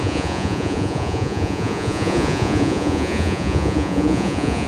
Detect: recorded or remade remade